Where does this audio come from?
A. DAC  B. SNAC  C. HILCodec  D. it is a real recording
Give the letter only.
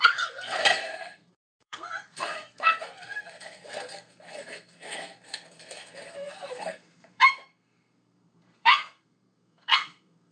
B